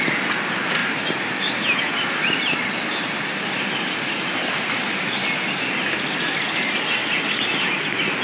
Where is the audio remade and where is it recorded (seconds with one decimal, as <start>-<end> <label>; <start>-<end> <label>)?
0.0-8.2 recorded